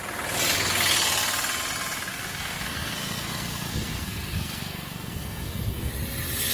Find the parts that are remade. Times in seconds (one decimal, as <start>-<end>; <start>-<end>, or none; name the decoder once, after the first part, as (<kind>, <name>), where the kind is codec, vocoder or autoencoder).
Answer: 2.1-5.9 (codec, SNAC)